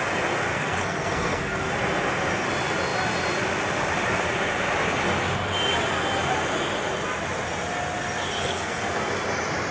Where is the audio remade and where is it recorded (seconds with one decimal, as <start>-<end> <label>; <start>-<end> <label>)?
0.0-0.5 recorded; 0.5-1.6 remade; 1.6-8.4 recorded; 8.4-8.9 remade; 8.9-9.7 recorded